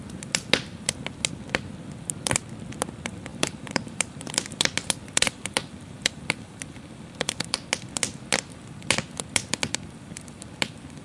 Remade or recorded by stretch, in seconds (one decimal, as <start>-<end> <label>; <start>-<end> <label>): 0.0-3.3 recorded; 3.3-4.3 remade; 4.3-11.0 recorded